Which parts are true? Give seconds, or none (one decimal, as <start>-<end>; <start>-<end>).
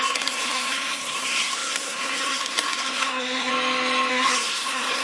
3.5-4.1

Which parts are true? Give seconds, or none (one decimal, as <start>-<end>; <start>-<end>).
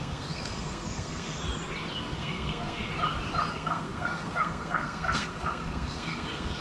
1.4-2.0; 2.9-3.5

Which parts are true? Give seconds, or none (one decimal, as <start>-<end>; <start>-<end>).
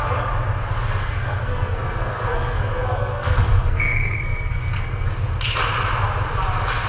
0.0-1.0; 5.1-6.9